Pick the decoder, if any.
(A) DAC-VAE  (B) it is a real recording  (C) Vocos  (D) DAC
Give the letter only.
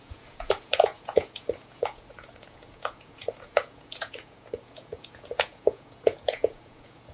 C